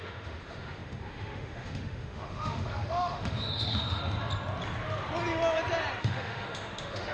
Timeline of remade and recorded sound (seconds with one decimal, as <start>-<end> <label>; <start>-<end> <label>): 0.0-4.0 remade; 4.0-6.0 recorded; 6.0-7.1 remade